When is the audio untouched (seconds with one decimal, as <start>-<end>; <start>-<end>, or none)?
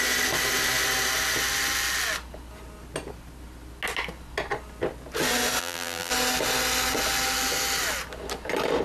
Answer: 0.0-5.6; 6.1-8.8